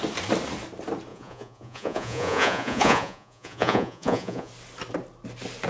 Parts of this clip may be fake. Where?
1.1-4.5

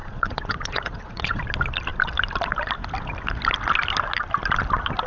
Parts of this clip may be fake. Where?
0.0-1.4

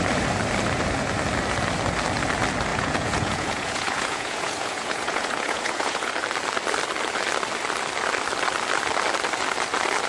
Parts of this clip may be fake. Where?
2.7-6.1

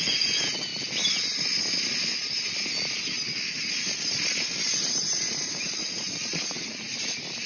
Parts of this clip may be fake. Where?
0.0-0.7; 4.9-7.5

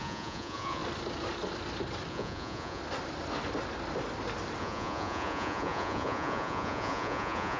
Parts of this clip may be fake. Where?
0.0-0.8; 2.1-2.8; 4.6-7.6